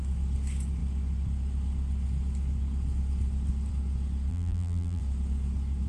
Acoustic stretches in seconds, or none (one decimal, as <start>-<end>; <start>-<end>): 0.0-4.3; 5.0-5.9